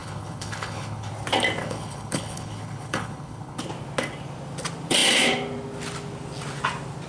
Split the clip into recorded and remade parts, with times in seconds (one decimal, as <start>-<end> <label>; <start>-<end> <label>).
0.0-1.1 remade; 1.1-1.6 recorded; 1.6-3.6 remade; 3.6-7.1 recorded